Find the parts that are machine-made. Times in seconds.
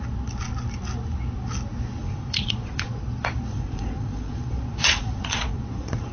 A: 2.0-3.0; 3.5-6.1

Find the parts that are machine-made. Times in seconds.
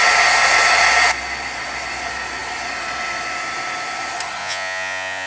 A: 4.4-5.3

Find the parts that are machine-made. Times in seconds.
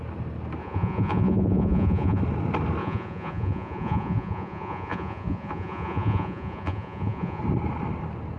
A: 0.6-2.2; 2.8-7.4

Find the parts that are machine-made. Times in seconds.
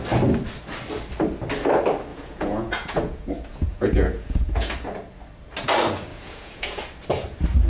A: 2.1-4.7; 6.1-6.8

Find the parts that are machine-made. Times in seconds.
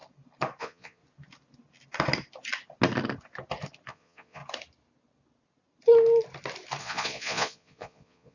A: 0.6-1.0; 3.9-4.4; 6.8-8.3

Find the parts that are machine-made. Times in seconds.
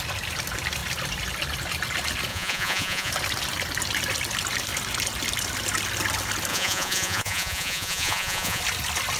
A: 2.3-3.1; 6.5-8.6